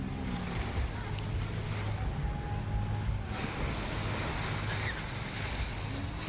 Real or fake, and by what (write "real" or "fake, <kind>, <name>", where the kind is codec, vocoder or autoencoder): real